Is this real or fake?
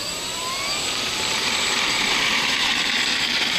fake